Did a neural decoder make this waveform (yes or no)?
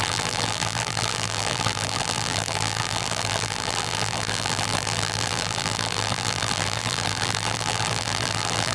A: yes